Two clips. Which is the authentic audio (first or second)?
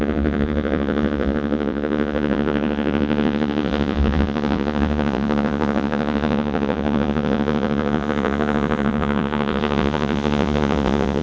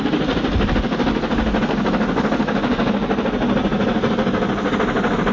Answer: second